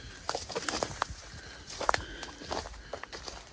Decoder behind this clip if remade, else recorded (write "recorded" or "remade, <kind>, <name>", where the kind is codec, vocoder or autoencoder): recorded